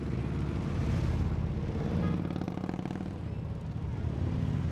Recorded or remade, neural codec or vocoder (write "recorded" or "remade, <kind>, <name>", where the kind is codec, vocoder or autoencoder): recorded